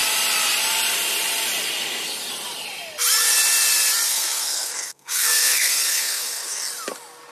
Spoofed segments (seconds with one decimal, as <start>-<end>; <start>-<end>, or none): 4.1-6.7